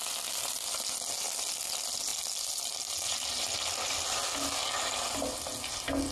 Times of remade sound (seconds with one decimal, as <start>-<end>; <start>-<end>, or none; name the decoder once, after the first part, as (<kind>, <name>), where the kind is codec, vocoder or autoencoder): none